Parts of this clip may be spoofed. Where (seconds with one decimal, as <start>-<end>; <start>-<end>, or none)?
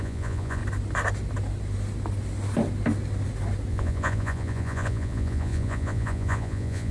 0.0-0.6; 3.7-6.9